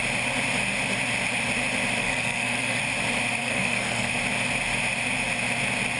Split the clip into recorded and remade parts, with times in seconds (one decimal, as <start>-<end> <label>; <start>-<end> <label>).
0.0-2.0 recorded; 2.0-2.8 remade; 2.8-3.4 recorded; 3.4-4.1 remade; 4.1-6.0 recorded